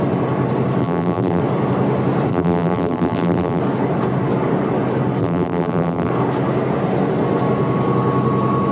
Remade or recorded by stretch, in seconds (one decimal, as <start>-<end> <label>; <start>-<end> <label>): 0.0-0.8 recorded; 0.8-1.4 remade; 1.4-2.3 recorded; 2.3-3.6 remade; 3.6-5.2 recorded; 5.2-6.1 remade; 6.1-8.7 recorded

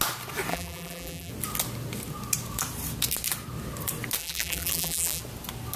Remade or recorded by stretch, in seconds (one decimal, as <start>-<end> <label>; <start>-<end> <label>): 0.0-0.5 recorded; 0.5-1.3 remade; 1.3-4.2 recorded; 4.2-5.2 remade; 5.2-5.8 recorded

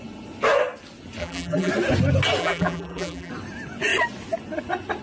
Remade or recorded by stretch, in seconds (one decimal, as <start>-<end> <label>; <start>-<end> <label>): 0.0-1.2 recorded; 1.2-1.7 remade; 1.7-2.4 recorded; 2.4-3.3 remade; 3.3-5.0 recorded

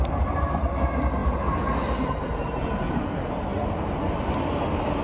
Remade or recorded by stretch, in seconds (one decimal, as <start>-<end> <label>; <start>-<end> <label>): 0.0-5.0 recorded

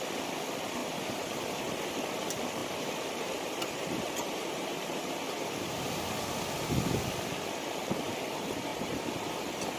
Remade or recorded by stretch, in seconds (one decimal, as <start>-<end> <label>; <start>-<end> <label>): 0.0-0.8 recorded; 0.8-1.8 remade; 1.8-2.6 recorded; 2.6-6.2 remade; 6.2-8.7 recorded; 8.7-9.3 remade; 9.3-9.8 recorded

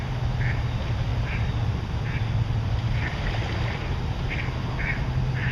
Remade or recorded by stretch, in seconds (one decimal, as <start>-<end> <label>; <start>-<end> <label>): 0.0-1.1 recorded; 1.1-4.4 remade; 4.4-5.5 recorded

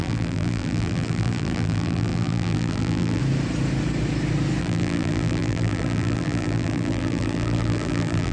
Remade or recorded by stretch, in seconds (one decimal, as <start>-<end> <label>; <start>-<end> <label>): 0.0-3.2 remade; 3.2-4.6 recorded; 4.6-8.3 remade

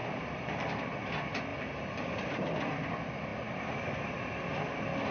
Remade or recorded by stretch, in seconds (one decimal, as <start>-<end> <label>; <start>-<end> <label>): 0.0-1.1 remade; 1.1-1.5 recorded; 1.5-2.2 remade; 2.2-5.1 recorded